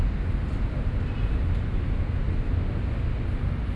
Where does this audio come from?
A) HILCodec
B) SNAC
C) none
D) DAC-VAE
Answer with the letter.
C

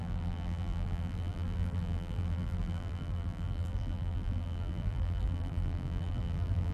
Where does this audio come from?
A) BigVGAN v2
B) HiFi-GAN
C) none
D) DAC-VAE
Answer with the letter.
A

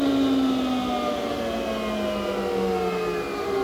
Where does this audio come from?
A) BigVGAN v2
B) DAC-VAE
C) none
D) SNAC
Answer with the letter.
C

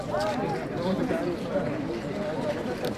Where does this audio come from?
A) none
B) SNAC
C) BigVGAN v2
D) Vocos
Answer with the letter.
A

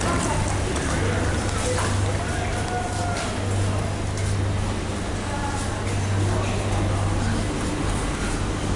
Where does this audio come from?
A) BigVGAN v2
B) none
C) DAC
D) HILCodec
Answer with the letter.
B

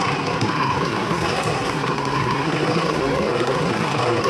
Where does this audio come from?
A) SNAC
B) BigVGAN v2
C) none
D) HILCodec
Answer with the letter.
A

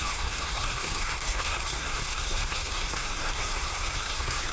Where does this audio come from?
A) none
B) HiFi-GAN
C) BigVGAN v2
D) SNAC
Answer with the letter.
D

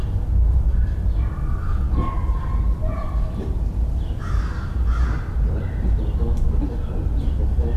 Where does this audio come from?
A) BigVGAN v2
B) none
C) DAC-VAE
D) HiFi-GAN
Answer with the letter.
B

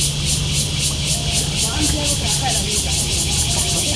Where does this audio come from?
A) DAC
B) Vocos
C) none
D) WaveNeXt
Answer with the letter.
C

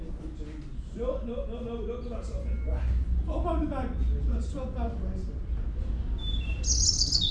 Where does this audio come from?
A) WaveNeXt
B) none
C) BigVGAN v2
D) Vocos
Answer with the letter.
B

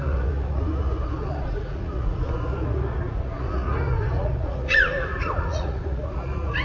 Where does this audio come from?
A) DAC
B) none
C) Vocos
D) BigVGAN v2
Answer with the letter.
C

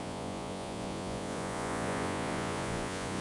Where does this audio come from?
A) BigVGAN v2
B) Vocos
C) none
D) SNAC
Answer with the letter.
B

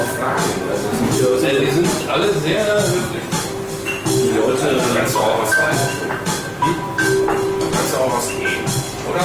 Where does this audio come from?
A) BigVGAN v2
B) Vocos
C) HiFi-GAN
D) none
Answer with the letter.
D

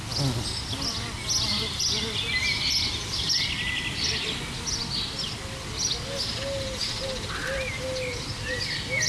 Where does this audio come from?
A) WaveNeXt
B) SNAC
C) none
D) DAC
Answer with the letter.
C